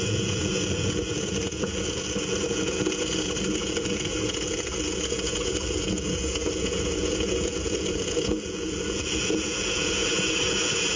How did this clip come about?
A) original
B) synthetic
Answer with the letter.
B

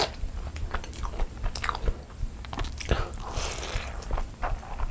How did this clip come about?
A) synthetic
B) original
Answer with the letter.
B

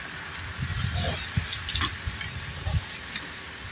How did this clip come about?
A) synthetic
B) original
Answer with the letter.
B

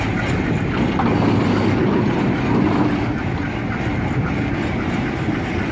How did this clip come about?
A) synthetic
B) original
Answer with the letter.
B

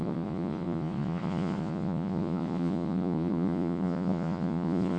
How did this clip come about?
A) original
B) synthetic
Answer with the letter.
B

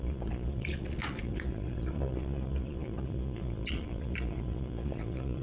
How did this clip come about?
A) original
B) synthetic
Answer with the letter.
B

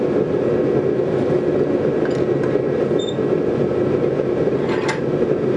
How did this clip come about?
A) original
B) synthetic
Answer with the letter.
A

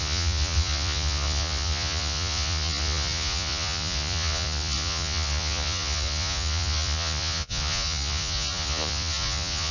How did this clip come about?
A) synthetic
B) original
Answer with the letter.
A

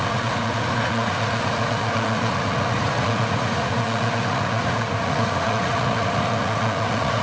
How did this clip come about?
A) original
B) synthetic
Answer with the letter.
B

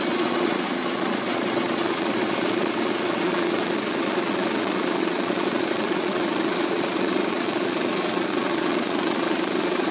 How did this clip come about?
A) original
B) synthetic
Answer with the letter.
B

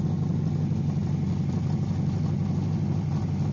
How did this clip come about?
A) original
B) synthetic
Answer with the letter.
A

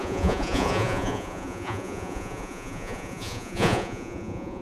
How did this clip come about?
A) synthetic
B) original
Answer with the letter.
A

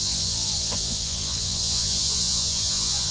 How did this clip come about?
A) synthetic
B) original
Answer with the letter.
A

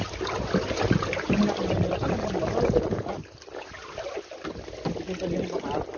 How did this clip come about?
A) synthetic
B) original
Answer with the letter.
B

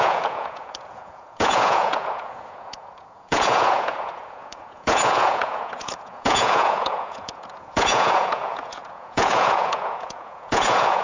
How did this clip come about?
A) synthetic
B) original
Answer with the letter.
A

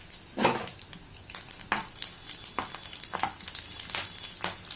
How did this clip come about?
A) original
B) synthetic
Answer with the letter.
A